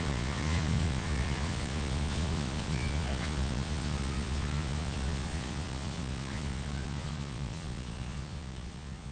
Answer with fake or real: fake